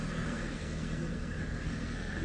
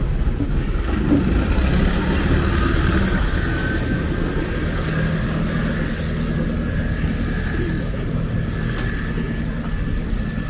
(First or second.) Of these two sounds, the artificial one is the first